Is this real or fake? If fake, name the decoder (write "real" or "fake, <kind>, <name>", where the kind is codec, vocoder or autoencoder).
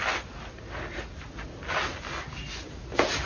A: real